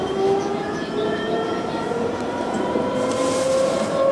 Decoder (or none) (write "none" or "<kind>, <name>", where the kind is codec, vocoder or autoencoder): vocoder, BigVGAN v2